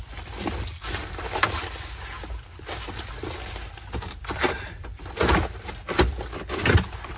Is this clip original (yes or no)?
yes